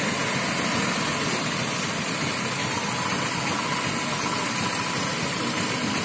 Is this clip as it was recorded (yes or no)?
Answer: yes